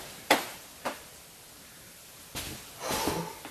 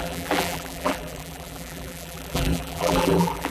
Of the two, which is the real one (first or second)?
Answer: first